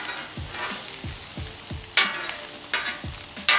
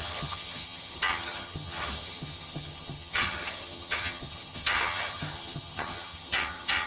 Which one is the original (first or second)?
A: first